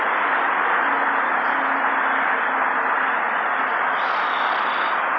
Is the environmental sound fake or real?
real